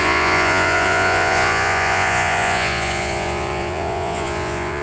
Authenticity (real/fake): fake